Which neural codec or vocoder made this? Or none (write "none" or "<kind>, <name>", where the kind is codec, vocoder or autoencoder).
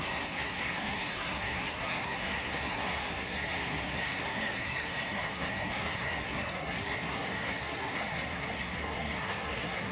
codec, SNAC